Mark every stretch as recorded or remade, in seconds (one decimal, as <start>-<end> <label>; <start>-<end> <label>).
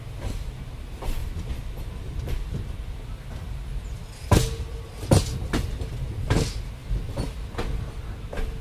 0.0-1.2 recorded; 1.2-5.8 remade; 5.8-8.6 recorded